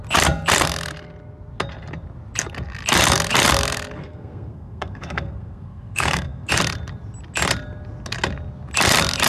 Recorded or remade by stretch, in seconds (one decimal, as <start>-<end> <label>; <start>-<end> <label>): 0.0-4.0 recorded; 4.0-6.5 remade; 6.5-9.3 recorded